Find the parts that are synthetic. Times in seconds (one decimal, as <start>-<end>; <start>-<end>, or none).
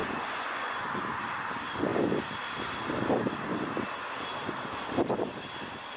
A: 0.0-1.0